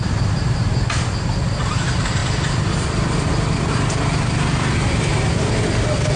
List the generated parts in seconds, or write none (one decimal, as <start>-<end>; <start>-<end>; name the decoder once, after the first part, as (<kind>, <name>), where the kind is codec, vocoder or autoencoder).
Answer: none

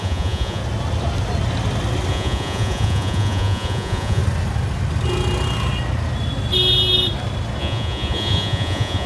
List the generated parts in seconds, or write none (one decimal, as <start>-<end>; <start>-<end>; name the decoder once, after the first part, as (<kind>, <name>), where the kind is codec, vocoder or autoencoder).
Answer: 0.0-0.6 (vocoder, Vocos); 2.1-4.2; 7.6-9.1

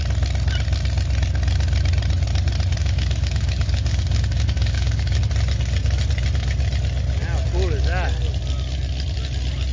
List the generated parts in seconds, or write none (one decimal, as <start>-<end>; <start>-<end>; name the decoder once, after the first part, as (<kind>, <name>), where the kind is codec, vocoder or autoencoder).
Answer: 2.8-5.2 (codec, DAC)

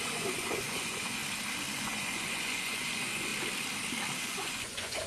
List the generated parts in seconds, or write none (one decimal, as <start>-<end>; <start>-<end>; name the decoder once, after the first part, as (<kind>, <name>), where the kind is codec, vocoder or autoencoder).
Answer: 0.0-1.2 (vocoder, Vocos); 1.7-3.3; 4.2-5.1

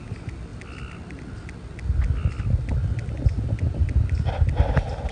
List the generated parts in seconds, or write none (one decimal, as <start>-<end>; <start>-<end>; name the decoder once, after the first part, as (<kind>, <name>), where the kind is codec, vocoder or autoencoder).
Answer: none

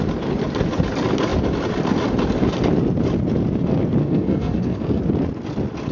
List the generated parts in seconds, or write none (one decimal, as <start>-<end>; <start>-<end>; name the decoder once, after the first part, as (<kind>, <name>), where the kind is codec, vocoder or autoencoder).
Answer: 4.0-5.0 (codec, SNAC)

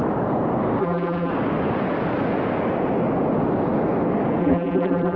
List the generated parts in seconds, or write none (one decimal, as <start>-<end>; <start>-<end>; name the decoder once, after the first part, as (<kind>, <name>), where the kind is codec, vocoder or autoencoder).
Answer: 0.8-1.3 (vocoder, BigVGAN v2); 4.4-5.2